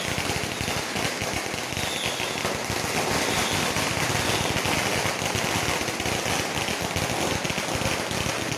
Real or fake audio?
real